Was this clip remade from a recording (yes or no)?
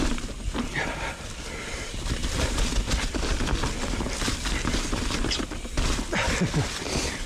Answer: no